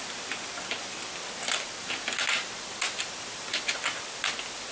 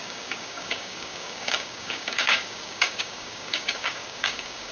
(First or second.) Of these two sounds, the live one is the first